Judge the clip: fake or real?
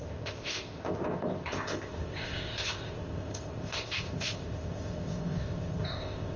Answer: fake